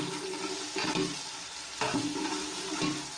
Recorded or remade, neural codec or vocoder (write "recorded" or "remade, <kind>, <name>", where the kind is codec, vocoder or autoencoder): recorded